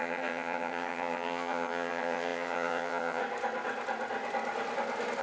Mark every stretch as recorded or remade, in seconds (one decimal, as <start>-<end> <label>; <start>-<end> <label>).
0.0-3.2 remade; 3.2-5.2 recorded